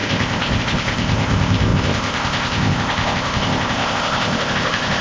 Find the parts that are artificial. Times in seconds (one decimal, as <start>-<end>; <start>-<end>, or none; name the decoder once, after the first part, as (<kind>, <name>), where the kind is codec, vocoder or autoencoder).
0.0-5.0 (codec, ZipCodec)

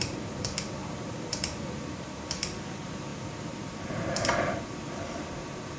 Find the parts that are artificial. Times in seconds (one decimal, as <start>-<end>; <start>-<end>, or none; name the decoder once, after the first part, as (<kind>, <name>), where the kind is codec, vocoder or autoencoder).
0.0-5.8 (vocoder, BigVGAN v2)

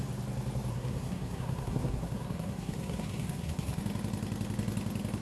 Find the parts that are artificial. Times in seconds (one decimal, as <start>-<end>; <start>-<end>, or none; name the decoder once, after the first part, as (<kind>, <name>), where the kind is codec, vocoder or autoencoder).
0.7-3.8 (codec, SNAC)